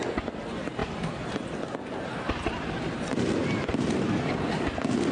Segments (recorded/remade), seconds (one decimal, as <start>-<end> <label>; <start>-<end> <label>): 0.0-5.1 recorded